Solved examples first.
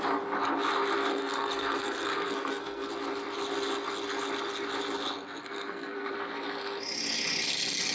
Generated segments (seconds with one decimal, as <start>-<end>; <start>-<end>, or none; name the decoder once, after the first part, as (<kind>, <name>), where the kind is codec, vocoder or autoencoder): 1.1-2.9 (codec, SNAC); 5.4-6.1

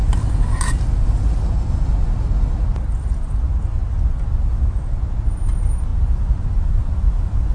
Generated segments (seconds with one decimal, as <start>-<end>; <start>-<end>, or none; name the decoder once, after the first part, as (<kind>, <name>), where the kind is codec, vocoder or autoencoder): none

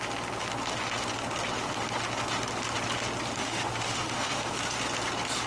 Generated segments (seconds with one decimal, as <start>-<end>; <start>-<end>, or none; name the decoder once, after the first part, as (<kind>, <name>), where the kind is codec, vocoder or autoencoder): 3.4-4.5 (autoencoder, DAC-VAE)

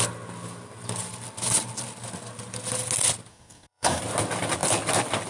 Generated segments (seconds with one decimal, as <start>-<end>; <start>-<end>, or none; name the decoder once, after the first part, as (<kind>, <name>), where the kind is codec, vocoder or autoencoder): 3.3-4.0 (codec, SNAC)

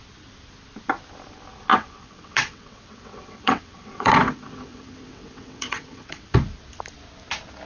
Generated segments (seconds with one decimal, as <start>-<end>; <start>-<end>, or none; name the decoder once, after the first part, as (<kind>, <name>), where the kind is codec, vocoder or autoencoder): 1.7-6.3 (vocoder, WaveNeXt)

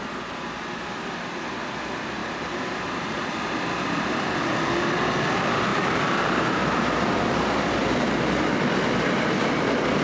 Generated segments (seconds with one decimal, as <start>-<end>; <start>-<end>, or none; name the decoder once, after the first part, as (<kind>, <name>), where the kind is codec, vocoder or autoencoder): 2.2-3.2 (vocoder, BigVGAN v2); 5.7-8.2

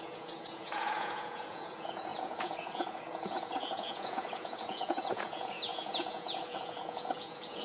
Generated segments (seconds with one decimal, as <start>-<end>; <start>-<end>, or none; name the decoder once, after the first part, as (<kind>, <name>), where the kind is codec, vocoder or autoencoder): 0.0-7.6 (vocoder, Vocos)